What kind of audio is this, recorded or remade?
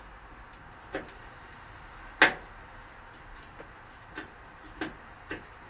recorded